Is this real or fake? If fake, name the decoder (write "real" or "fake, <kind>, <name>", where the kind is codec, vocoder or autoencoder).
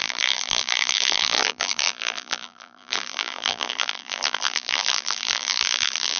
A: fake, vocoder, BigVGAN v2